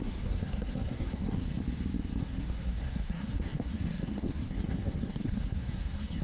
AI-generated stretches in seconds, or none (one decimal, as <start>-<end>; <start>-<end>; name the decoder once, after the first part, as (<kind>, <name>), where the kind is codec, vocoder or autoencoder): 0.0-1.6 (codec, SNAC); 2.2-6.2